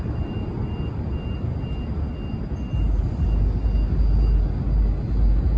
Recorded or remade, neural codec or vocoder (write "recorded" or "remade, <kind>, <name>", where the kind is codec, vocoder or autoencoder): recorded